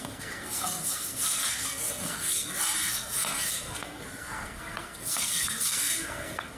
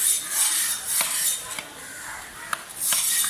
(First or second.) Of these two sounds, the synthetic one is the first